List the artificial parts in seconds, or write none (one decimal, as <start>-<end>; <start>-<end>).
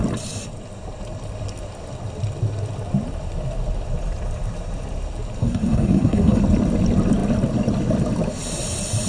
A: 5.4-6.4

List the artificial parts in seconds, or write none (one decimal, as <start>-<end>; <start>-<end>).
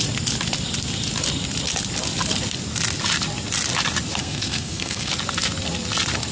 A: 4.2-5.1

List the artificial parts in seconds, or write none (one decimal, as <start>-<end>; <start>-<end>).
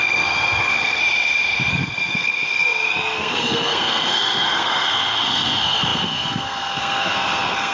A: 0.0-1.0; 1.7-7.7